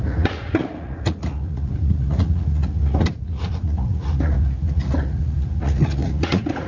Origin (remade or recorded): remade